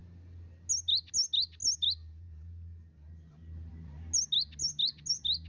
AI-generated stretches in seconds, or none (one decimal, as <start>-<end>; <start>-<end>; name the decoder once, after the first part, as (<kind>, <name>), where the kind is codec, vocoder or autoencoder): none